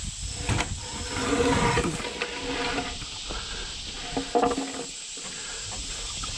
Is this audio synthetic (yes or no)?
no